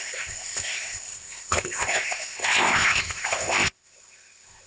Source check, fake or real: fake